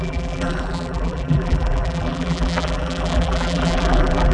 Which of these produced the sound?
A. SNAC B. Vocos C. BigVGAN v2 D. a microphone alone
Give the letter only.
C